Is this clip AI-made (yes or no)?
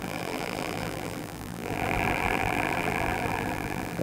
yes